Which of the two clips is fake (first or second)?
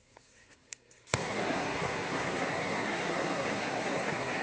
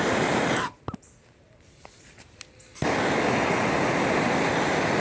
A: first